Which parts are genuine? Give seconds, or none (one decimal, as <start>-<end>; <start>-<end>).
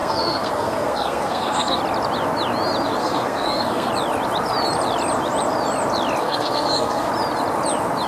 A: 1.8-3.0; 3.9-6.2; 7.1-8.1